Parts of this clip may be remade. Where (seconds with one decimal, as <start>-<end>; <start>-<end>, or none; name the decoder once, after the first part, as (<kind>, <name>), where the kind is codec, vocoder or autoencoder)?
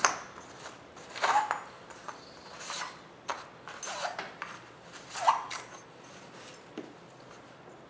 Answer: none